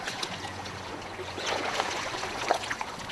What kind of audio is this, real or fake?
fake